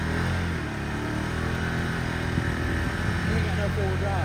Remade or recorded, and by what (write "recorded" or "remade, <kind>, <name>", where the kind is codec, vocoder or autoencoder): recorded